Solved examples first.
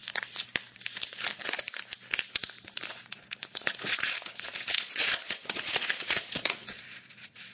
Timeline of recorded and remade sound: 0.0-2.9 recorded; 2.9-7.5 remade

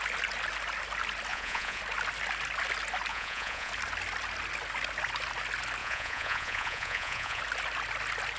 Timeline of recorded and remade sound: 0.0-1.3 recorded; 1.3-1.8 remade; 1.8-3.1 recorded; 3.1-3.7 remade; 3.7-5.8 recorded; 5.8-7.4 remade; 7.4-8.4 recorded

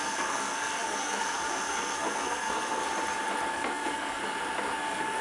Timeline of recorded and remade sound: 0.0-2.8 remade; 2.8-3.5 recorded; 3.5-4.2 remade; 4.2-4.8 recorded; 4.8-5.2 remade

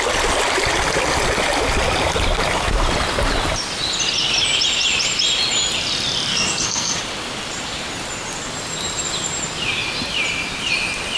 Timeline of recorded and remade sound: 0.0-6.3 recorded; 6.3-7.0 remade; 7.0-11.2 recorded